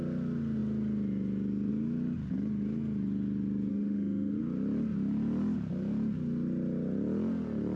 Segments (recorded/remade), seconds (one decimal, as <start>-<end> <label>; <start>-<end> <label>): 0.0-3.7 recorded; 3.7-4.4 remade; 4.4-7.8 recorded